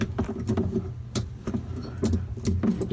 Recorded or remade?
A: recorded